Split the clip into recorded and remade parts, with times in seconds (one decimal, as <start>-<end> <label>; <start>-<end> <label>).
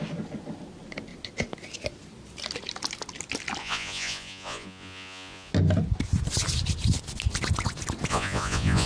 0.0-3.6 recorded; 3.6-5.5 remade; 5.5-8.1 recorded; 8.1-8.9 remade